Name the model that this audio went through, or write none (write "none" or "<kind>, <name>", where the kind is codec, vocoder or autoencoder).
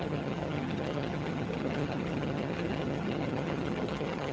vocoder, HiFi-GAN